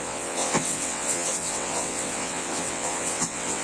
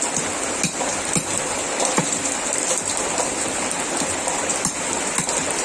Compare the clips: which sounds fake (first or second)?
first